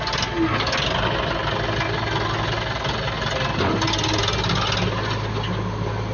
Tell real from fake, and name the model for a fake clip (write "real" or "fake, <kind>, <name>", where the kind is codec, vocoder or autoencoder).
real